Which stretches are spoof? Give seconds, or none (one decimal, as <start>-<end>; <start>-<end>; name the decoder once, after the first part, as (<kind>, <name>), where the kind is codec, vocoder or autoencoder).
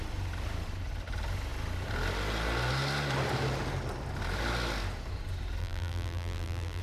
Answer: 5.6-6.8 (vocoder, BigVGAN v2)